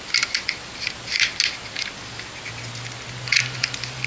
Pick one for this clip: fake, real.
real